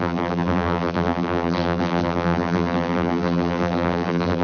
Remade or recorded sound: remade